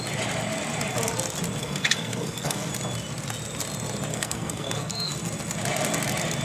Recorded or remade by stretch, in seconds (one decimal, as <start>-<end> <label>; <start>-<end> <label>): 0.0-1.6 recorded; 1.6-2.7 remade; 2.7-4.1 recorded; 4.1-5.1 remade; 5.1-6.4 recorded